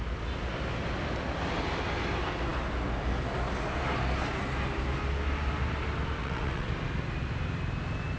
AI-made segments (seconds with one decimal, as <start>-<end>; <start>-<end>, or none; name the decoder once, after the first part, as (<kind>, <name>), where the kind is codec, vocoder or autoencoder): 6.2-6.7 (vocoder, WaveNeXt)

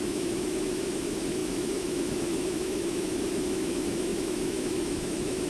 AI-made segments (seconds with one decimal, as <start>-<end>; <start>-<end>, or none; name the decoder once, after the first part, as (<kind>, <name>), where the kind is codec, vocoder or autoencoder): 0.0-5.5 (autoencoder, DAC-VAE)

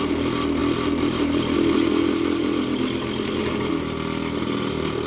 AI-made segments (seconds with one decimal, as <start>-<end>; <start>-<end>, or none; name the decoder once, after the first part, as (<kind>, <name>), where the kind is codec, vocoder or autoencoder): none

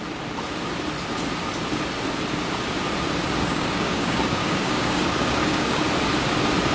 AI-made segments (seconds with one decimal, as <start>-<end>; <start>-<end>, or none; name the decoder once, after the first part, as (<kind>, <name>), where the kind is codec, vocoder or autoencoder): 3.4-5.8 (codec, DAC)

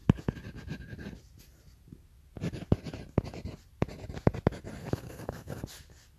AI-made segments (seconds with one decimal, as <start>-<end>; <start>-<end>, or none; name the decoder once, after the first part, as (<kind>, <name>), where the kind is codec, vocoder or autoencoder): 4.8-5.6 (codec, SNAC)